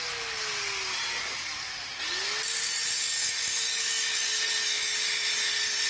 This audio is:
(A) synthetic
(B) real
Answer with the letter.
B